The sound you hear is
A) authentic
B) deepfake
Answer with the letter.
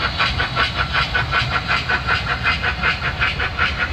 A